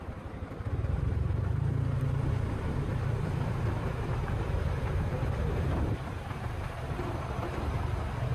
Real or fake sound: fake